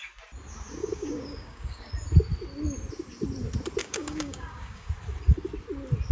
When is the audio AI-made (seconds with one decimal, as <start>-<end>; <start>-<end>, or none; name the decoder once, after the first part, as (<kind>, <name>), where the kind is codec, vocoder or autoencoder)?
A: 0.8-1.9 (codec, DAC); 3.8-4.9